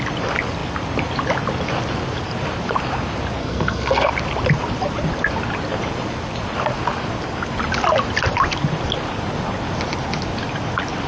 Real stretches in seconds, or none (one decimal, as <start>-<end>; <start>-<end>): 0.0-3.4; 4.1-11.1